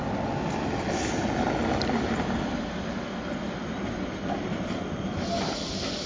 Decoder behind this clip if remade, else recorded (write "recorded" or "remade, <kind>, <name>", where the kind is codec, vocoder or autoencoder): recorded